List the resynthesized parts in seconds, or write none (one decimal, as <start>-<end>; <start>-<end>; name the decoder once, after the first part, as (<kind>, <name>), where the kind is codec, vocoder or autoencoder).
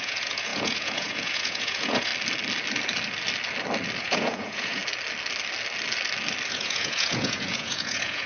0.0-2.1 (vocoder, Vocos); 4.0-4.8; 6.5-8.3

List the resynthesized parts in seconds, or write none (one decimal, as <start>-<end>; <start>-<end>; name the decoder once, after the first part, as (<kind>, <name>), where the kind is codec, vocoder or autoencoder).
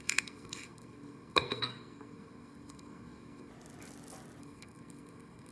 0.0-3.5 (codec, SNAC); 4.4-5.5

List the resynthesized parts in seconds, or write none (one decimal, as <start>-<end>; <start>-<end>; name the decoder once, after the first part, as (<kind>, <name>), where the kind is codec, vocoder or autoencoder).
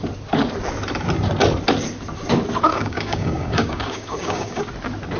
2.7-4.6 (codec, DAC)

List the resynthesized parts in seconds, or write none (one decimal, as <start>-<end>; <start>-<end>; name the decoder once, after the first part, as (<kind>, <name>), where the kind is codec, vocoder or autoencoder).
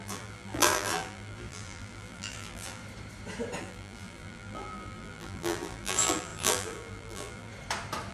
0.0-2.8 (vocoder, BigVGAN v2); 3.6-7.5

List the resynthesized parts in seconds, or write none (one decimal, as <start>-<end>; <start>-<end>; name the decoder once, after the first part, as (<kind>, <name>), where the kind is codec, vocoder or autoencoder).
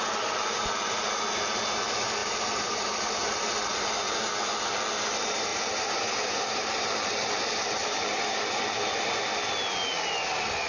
2.2-3.4 (vocoder, BigVGAN v2); 5.5-6.8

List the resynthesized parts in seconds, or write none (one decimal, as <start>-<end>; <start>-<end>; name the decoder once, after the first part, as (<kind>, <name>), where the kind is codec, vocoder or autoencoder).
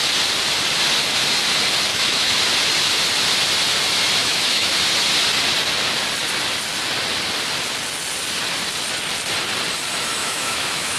1.9-2.4 (autoencoder, DAC-VAE); 4.2-4.7; 10.2-11.0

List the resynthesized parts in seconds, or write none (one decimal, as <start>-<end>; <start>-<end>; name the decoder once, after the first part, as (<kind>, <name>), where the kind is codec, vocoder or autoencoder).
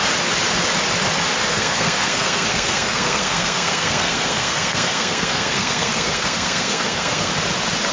1.5-7.3 (codec, SNAC)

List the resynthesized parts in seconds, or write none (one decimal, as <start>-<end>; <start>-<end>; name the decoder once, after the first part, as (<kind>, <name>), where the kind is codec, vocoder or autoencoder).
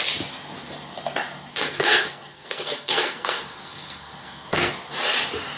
1.5-4.7 (codec, SNAC)